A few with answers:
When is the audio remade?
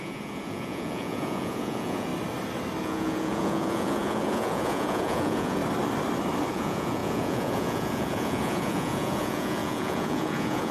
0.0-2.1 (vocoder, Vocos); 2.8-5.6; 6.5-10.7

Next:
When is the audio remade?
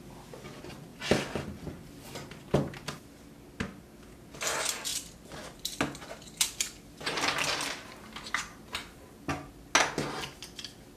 none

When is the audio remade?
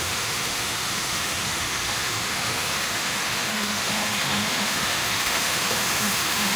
0.0-6.6 (autoencoder, DAC-VAE)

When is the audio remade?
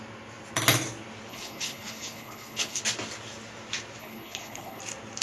1.3-2.8 (codec, HILCodec); 4.0-4.8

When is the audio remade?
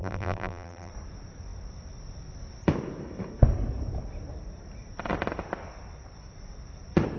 0.0-0.9 (vocoder, BigVGAN v2)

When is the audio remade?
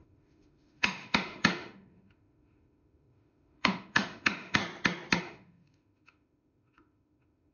0.0-4.6 (autoencoder, DAC-VAE); 5.2-7.5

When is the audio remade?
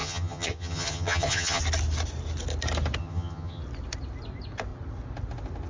0.0-1.6 (vocoder, HiFi-GAN); 3.0-3.6